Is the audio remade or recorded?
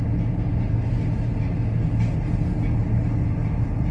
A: recorded